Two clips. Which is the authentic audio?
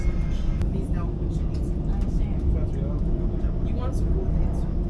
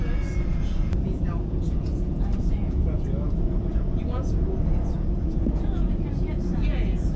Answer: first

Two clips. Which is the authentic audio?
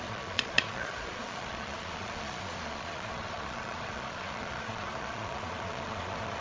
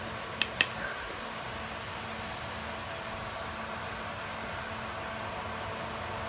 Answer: second